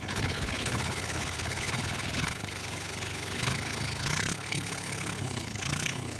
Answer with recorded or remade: remade